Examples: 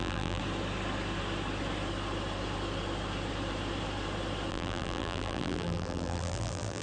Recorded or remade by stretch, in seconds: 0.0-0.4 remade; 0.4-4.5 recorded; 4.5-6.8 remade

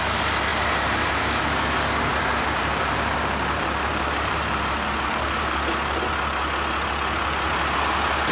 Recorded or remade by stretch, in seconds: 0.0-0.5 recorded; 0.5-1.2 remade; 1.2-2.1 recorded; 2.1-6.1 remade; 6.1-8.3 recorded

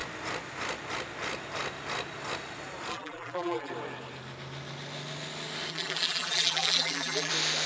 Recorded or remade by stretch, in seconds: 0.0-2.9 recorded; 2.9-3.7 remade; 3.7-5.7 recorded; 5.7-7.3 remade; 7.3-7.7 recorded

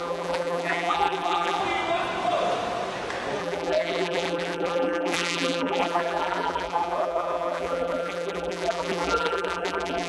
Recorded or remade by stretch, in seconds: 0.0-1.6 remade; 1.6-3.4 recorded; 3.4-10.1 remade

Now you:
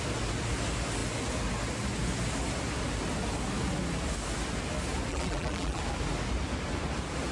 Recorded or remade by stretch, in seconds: 0.0-5.1 recorded; 5.1-5.8 remade; 5.8-7.3 recorded

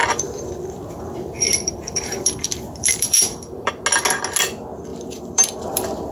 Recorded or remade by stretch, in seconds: 0.0-3.7 remade; 3.7-4.9 recorded; 4.9-6.1 remade